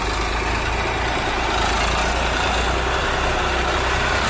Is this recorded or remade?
recorded